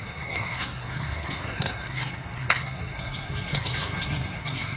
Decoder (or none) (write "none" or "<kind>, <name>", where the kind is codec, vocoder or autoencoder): codec, SNAC